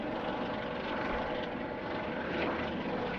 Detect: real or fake fake